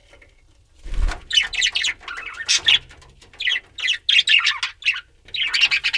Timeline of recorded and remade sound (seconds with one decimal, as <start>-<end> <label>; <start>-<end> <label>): 0.0-6.0 recorded